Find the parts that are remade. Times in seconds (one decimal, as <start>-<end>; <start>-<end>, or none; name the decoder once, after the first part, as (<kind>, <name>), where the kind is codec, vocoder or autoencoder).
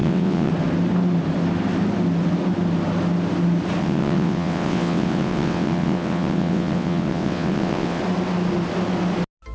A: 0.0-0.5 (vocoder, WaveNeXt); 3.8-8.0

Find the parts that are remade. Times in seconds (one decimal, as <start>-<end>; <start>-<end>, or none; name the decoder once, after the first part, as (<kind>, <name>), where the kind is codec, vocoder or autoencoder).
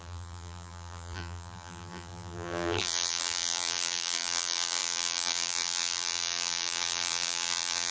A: 0.0-7.9 (vocoder, BigVGAN v2)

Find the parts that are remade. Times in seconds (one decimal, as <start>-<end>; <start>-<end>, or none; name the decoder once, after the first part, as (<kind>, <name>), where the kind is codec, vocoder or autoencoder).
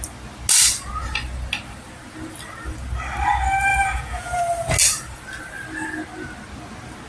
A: 3.7-4.4 (vocoder, Vocos)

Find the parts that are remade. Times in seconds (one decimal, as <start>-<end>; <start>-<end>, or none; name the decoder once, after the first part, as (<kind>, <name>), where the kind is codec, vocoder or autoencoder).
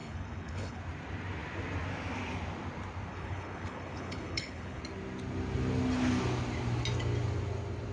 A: 0.0-0.8 (codec, HILCodec); 3.1-4.8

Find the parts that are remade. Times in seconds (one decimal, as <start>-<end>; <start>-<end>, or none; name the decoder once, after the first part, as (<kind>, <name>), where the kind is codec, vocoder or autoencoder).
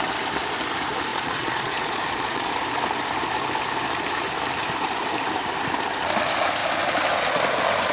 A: 1.1-2.5 (vocoder, Vocos)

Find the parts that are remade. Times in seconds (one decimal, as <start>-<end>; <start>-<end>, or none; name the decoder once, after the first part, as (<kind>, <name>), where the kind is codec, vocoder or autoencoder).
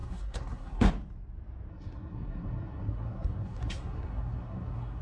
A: 0.0-0.9 (codec, SNAC); 1.7-5.0